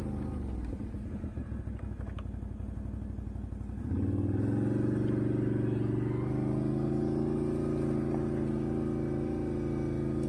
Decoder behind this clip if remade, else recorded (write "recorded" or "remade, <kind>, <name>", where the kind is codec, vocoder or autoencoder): recorded